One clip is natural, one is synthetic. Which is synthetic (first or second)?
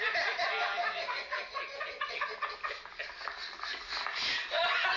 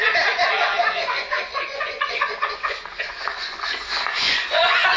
second